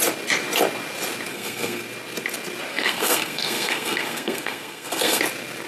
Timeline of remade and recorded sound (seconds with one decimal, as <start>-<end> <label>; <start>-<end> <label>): 0.0-1.3 recorded; 1.3-1.8 remade; 1.8-2.7 recorded; 2.7-5.2 remade; 5.2-5.7 recorded